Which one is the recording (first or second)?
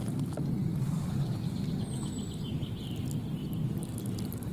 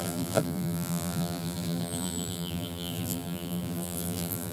first